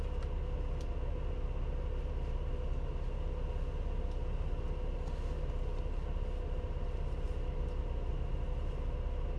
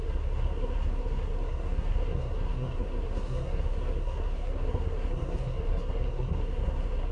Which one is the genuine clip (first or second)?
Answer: first